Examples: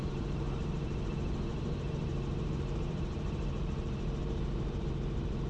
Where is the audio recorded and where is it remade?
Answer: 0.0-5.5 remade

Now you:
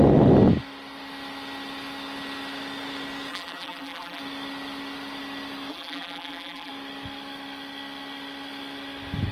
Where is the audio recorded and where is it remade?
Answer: 0.0-3.3 recorded; 3.3-4.2 remade; 4.2-5.7 recorded; 5.7-6.7 remade; 6.7-9.3 recorded

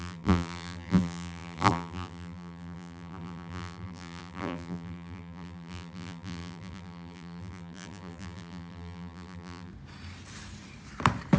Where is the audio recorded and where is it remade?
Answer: 0.0-9.7 remade; 9.7-11.4 recorded

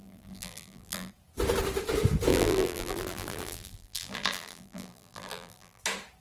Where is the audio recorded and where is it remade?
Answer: 0.0-1.1 remade; 1.1-2.3 recorded; 2.3-5.8 remade; 5.8-6.2 recorded